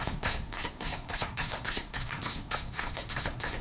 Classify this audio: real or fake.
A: fake